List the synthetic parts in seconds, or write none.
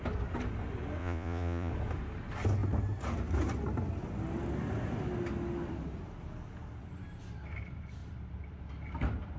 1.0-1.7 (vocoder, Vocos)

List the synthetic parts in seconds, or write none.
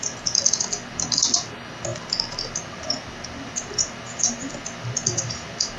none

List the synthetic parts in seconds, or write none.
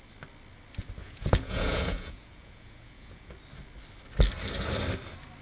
1.0-3.3 (vocoder, Vocos)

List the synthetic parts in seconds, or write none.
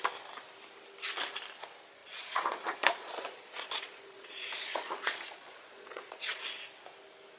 2.0-6.4 (vocoder, Vocos)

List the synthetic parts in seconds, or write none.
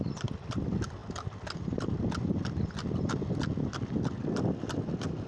none